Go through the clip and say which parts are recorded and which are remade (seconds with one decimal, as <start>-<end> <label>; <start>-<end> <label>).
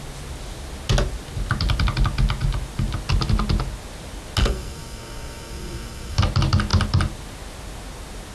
0.0-4.4 recorded; 4.4-6.2 remade; 6.2-8.3 recorded